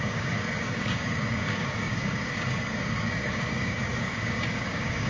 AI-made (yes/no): yes